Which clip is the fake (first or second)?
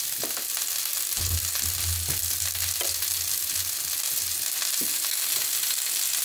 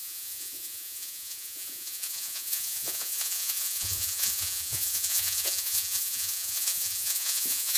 second